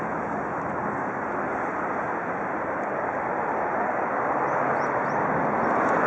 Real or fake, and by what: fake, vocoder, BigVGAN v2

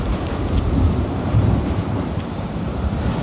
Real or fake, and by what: fake, vocoder, BigVGAN v2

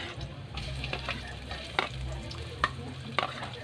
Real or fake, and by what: fake, vocoder, BigVGAN v2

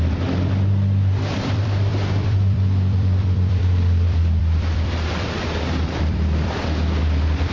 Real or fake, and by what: fake, vocoder, BigVGAN v2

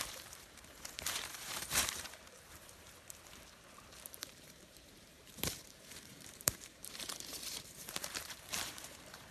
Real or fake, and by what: fake, vocoder, BigVGAN v2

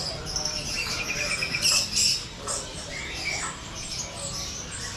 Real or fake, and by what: real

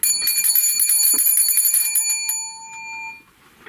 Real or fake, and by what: real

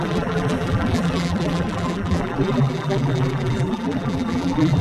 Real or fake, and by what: fake, vocoder, BigVGAN v2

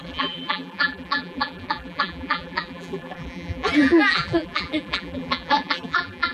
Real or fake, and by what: fake, vocoder, BigVGAN v2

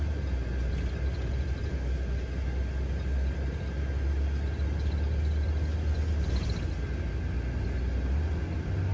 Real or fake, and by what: real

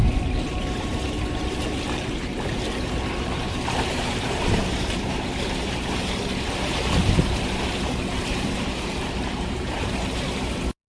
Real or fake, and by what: fake, vocoder, BigVGAN v2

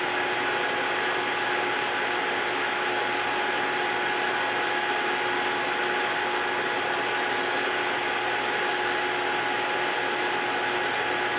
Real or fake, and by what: real